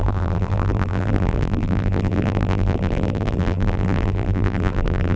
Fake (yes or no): yes